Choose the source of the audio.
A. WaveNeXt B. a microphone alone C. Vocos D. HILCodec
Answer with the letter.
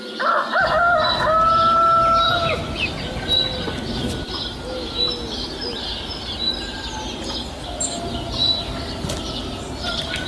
B